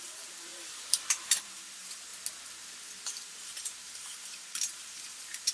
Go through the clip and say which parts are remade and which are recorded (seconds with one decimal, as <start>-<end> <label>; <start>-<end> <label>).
0.0-2.1 remade; 2.1-3.1 recorded; 3.1-5.5 remade